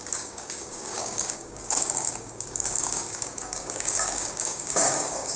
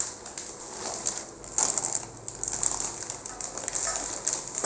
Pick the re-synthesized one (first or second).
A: first